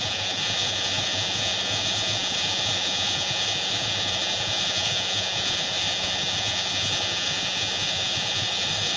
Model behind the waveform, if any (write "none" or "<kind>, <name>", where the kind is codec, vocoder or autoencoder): vocoder, Vocos